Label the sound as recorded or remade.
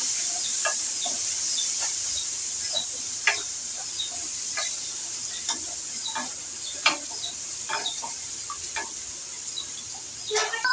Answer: remade